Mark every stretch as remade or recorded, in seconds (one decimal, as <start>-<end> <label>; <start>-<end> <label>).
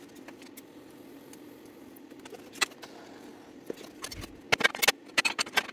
0.0-5.7 recorded